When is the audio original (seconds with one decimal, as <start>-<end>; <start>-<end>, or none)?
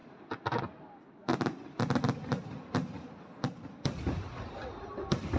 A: 0.0-5.4